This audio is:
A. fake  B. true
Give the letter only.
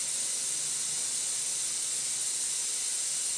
B